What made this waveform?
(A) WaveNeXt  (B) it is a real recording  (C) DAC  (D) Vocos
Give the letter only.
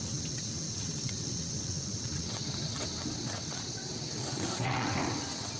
A